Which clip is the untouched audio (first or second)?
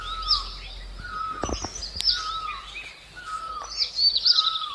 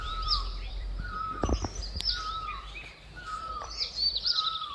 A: first